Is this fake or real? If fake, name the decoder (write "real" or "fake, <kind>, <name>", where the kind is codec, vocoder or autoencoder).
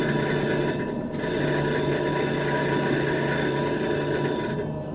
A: real